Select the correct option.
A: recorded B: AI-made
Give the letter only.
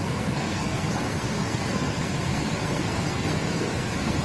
B